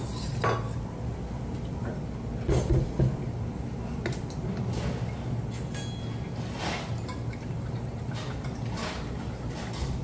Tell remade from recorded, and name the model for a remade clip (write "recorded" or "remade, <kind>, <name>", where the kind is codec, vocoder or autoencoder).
recorded